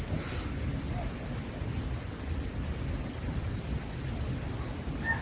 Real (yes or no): yes